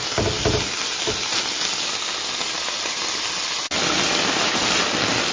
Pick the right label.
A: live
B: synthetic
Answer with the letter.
A